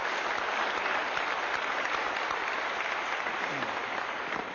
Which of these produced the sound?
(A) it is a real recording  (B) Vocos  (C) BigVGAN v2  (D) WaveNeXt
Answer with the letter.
A